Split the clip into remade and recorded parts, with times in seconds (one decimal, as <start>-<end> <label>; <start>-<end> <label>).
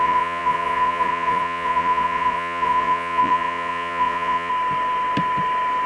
0.0-4.5 remade; 4.5-5.9 recorded